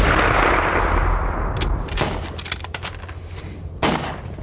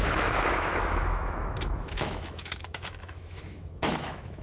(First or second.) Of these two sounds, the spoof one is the second